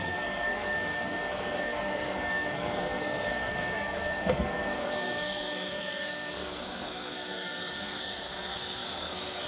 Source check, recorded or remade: remade